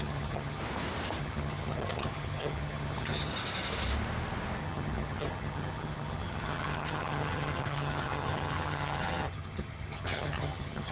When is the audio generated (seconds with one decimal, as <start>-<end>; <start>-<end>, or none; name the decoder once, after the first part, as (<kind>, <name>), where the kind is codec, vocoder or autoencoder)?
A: 0.0-0.6 (vocoder, HiFi-GAN); 1.2-3.3; 4.6-10.9